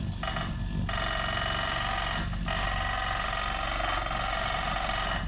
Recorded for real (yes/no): yes